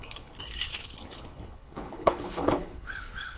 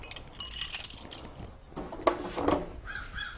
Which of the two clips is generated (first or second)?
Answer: first